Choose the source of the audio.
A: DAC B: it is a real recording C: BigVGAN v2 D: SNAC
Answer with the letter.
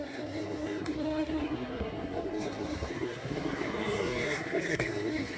D